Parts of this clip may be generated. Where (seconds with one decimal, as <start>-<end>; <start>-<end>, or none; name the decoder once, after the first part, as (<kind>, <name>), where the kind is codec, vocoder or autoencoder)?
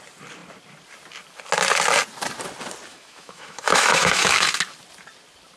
2.9-4.5 (autoencoder, DAC-VAE)